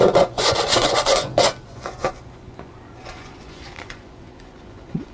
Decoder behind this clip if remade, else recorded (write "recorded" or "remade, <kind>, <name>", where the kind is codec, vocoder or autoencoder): remade, vocoder, Vocos